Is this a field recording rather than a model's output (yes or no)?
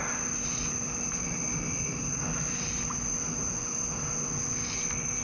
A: yes